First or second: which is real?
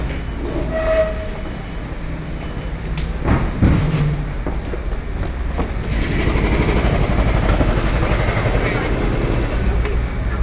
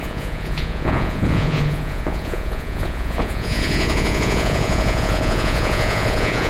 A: first